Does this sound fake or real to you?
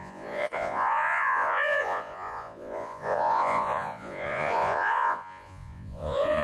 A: fake